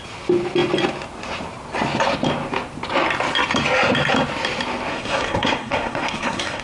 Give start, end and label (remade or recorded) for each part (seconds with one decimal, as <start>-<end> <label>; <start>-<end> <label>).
0.0-4.9 recorded; 4.9-6.6 remade